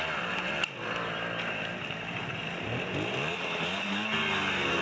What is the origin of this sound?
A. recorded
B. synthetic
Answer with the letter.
A